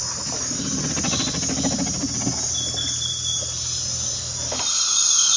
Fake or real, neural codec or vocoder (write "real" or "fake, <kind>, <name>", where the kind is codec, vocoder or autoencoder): real